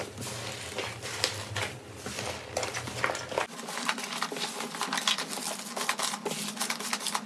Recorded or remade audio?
recorded